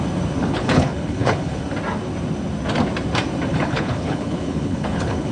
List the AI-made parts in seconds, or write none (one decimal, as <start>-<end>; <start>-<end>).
0.4-1.6; 3.5-5.3